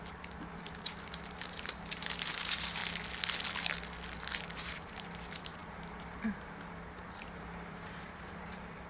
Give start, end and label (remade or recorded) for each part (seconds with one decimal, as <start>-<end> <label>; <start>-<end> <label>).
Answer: 0.0-2.8 remade; 2.8-4.5 recorded; 4.5-8.9 remade